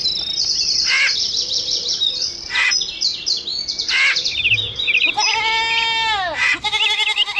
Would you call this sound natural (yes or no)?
yes